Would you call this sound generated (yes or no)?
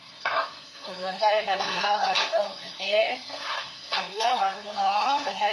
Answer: yes